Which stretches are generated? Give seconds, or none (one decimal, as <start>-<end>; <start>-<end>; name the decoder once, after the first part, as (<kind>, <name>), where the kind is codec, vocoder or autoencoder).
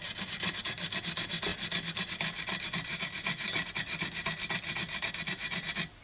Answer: none